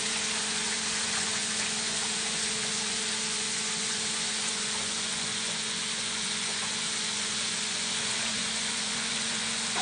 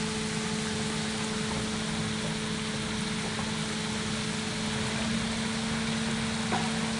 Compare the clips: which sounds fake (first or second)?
first